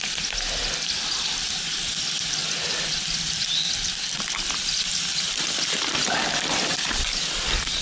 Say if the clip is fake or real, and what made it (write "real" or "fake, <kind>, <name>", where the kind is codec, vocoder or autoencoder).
real